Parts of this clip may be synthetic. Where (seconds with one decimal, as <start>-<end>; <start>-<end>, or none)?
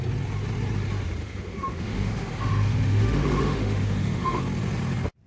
1.2-4.4